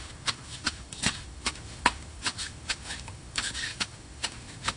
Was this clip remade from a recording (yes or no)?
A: yes